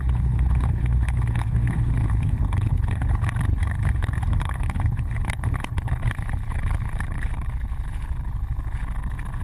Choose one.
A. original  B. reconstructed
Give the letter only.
B